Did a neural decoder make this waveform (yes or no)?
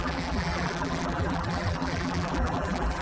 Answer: yes